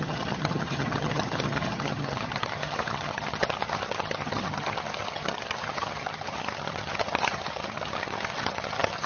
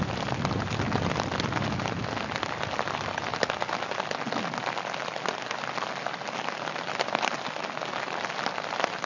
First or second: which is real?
second